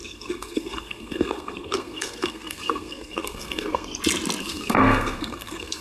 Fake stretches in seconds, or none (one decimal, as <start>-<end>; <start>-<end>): 0.0-3.9; 4.4-5.8